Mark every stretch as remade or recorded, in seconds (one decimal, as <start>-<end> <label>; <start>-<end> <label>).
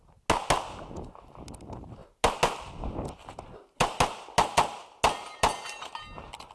0.0-6.5 recorded